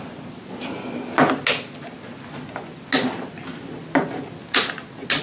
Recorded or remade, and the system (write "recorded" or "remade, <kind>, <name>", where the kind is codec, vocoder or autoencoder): recorded